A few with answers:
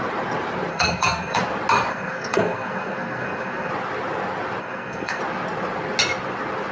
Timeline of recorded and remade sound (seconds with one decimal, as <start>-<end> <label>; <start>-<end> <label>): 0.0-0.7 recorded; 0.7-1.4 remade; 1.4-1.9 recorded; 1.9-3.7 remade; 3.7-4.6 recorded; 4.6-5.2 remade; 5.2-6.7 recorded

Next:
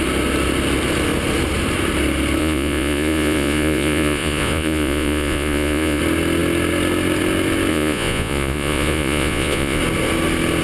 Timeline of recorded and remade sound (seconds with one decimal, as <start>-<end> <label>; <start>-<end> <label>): 0.0-2.4 recorded; 2.4-6.0 remade; 6.0-7.7 recorded; 7.7-9.8 remade; 9.8-10.6 recorded

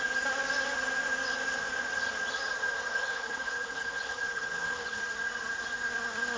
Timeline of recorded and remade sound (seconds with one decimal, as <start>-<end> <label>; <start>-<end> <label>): 0.0-2.9 recorded; 2.9-5.0 remade; 5.0-6.4 recorded